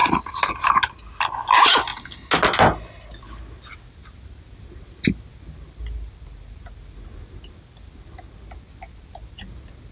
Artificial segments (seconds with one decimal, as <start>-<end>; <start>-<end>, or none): none